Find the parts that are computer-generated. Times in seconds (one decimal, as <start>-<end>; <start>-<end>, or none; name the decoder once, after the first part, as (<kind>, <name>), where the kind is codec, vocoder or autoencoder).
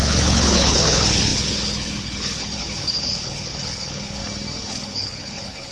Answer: 0.0-4.2 (codec, HILCodec); 4.7-5.7